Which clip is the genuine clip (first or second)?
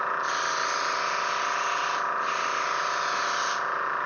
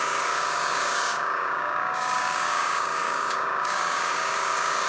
first